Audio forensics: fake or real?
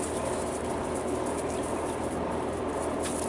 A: real